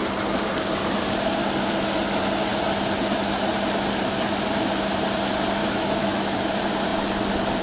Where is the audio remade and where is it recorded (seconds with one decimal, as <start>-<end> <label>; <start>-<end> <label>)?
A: 0.0-5.6 recorded; 5.6-6.5 remade; 6.5-7.6 recorded